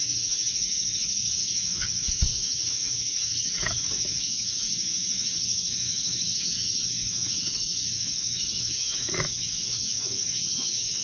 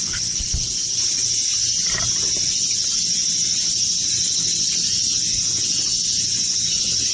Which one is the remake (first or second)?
first